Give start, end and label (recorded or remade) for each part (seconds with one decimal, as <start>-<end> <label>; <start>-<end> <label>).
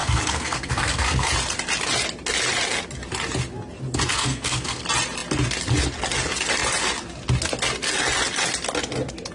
0.0-1.3 remade; 1.3-4.1 recorded; 4.1-4.8 remade; 4.8-9.3 recorded